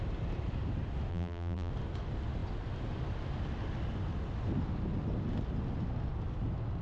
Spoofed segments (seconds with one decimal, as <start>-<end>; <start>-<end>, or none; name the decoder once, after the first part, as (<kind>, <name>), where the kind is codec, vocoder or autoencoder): 1.1-1.7 (vocoder, BigVGAN v2)